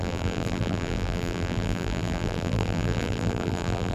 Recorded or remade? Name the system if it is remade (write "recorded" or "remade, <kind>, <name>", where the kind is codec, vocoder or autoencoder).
remade, vocoder, BigVGAN v2